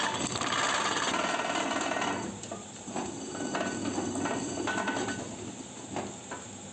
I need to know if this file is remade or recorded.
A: recorded